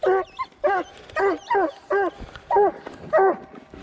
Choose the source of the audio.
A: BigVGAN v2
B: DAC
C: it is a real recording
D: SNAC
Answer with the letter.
C